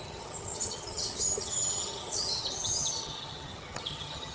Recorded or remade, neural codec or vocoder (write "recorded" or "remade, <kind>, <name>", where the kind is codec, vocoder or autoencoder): remade, vocoder, HiFi-GAN